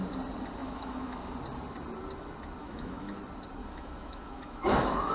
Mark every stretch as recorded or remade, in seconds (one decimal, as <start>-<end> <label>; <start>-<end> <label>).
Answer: 0.0-0.6 recorded; 0.6-1.3 remade; 1.3-2.6 recorded; 2.6-3.2 remade; 3.2-3.6 recorded; 3.6-5.1 remade